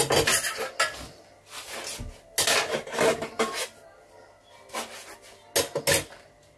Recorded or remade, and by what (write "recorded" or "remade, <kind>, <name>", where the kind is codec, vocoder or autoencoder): recorded